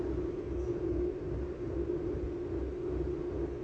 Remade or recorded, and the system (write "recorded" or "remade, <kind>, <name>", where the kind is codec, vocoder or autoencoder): recorded